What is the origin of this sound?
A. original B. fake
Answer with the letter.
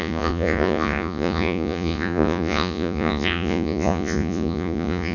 B